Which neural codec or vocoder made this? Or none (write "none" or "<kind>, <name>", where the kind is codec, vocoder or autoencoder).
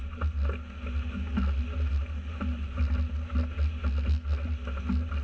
none